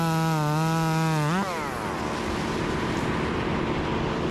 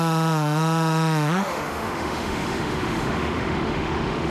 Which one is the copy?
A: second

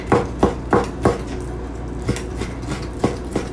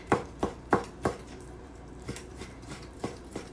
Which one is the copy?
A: second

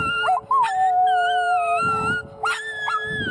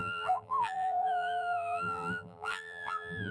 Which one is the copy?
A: second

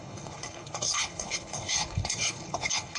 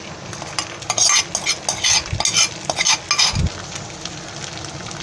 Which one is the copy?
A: first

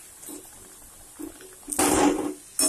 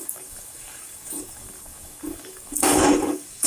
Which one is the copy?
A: second